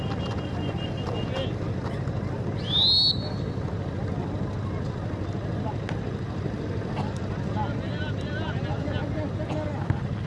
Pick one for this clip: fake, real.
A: real